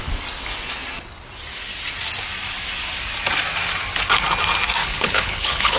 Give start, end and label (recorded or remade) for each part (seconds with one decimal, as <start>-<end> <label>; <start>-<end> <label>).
0.0-4.8 recorded; 4.8-5.8 remade